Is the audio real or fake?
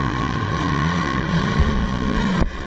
fake